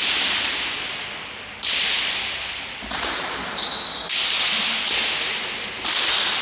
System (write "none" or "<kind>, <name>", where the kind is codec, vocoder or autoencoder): none